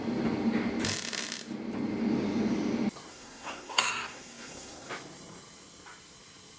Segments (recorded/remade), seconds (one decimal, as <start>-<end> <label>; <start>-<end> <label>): 0.0-3.1 recorded; 3.1-4.9 remade; 4.9-6.6 recorded